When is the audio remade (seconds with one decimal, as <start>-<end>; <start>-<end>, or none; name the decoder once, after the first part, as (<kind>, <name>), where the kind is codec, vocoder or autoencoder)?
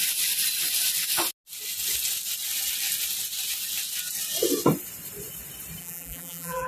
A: 5.8-6.7 (vocoder, BigVGAN v2)